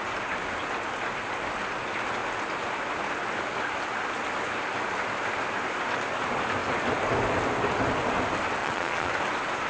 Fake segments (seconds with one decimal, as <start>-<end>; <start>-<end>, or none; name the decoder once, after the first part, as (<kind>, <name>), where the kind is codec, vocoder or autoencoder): 8.6-9.1 (vocoder, Vocos)